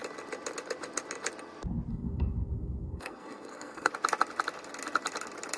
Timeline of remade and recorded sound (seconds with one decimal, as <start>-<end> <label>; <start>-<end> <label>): 0.0-1.9 recorded; 1.9-3.9 remade; 3.9-5.6 recorded